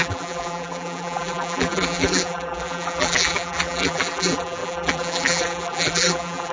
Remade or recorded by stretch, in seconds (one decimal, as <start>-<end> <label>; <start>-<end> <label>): 0.0-6.5 remade